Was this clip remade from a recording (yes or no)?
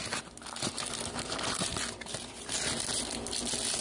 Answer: no